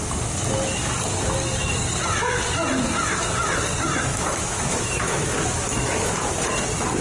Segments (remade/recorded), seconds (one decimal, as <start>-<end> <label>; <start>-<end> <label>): 0.0-4.1 recorded; 4.1-6.3 remade; 6.3-7.0 recorded